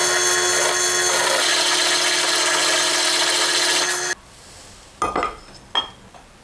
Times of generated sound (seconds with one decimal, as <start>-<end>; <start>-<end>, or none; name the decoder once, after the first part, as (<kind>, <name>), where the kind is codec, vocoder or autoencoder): none